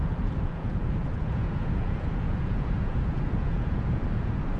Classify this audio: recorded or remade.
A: remade